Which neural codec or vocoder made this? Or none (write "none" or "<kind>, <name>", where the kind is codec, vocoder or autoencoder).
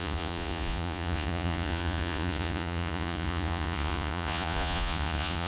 vocoder, Vocos